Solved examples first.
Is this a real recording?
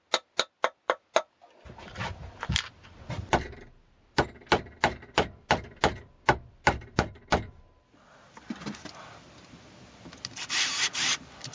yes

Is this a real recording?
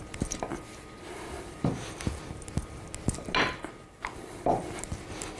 yes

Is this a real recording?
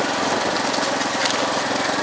yes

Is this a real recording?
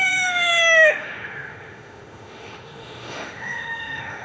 no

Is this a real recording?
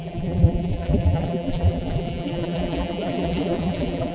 no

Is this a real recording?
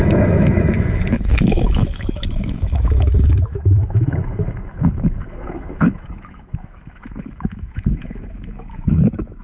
no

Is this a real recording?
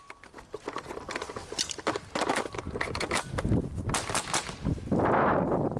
yes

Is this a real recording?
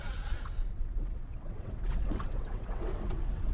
no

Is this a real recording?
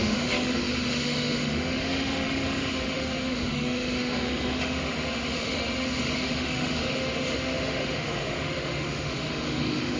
no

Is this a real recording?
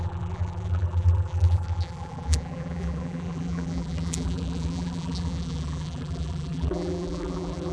no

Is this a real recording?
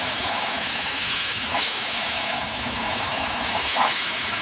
no